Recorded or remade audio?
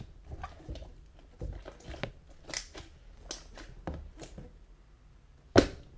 recorded